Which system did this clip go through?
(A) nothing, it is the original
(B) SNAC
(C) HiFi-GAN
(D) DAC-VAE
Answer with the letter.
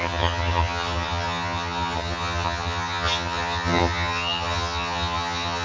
C